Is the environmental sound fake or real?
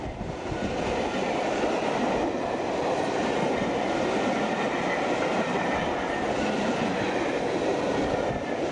real